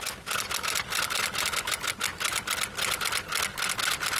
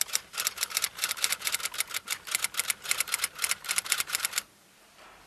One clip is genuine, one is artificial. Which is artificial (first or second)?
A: second